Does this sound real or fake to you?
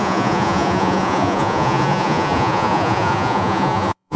fake